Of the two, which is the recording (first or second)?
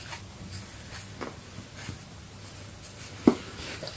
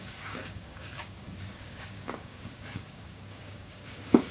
first